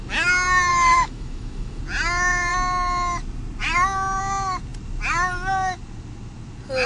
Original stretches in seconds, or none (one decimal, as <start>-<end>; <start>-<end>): 0.0-0.7; 1.8-6.9